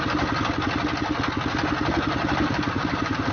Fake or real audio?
real